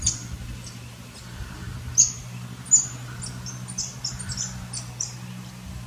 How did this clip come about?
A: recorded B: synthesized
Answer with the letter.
A